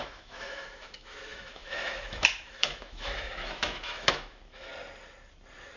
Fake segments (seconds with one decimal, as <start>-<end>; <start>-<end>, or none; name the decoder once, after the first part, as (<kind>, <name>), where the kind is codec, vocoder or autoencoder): 0.0-4.7 (autoencoder, DAC-VAE)